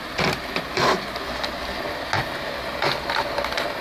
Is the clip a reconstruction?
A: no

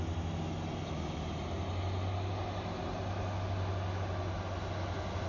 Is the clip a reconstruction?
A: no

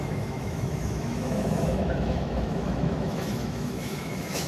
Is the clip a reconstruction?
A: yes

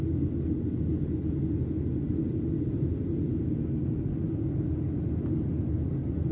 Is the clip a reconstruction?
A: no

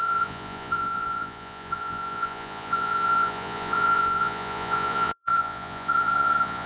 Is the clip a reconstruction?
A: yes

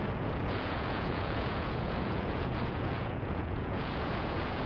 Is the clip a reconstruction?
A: yes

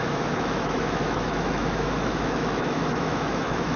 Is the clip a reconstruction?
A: yes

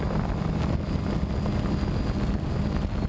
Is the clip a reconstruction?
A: no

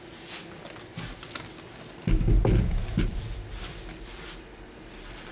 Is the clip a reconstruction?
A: no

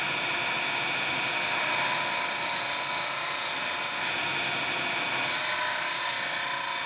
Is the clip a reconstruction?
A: no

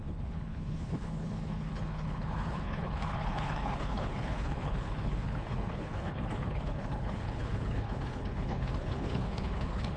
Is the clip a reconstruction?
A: yes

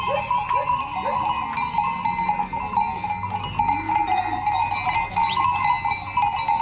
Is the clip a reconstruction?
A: no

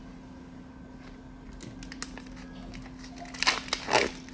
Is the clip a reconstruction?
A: no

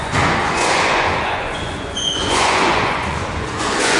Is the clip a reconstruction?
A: yes